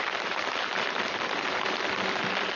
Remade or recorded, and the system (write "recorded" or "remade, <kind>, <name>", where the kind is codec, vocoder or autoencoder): recorded